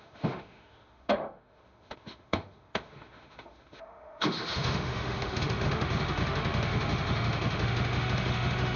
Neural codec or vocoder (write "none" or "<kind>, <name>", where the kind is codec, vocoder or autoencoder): autoencoder, DAC-VAE